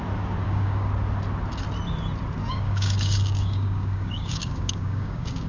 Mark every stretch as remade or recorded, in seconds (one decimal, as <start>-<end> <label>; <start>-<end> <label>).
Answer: 0.0-0.4 recorded; 0.4-0.9 remade; 0.9-2.4 recorded; 2.4-5.5 remade